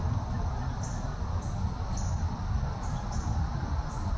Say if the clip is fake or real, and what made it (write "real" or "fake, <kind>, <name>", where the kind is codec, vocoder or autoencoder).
real